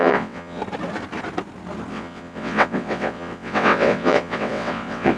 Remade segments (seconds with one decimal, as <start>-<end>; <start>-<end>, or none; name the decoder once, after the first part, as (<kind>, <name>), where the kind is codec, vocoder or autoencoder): 0.0-0.6 (vocoder, WaveNeXt); 1.9-5.2